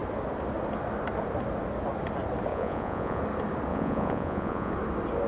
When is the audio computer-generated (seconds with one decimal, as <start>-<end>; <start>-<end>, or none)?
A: 2.5-3.2; 3.7-4.7